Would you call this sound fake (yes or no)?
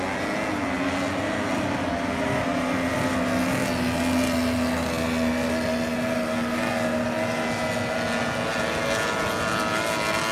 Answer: no